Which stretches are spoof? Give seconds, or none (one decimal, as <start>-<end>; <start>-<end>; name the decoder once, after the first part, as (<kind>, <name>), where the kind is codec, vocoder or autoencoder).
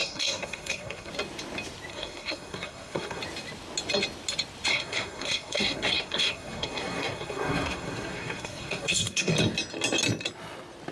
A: 0.0-1.1 (codec, SNAC); 1.9-3.2; 4.7-9.3